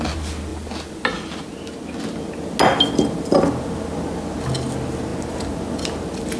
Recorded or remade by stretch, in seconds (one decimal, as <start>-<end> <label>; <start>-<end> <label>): 0.0-6.4 recorded